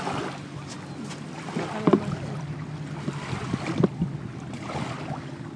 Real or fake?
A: real